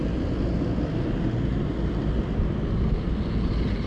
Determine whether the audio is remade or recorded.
recorded